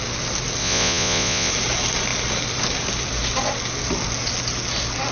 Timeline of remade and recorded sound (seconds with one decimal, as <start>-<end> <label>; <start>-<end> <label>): 0.0-0.6 recorded; 0.6-1.5 remade; 1.5-5.1 recorded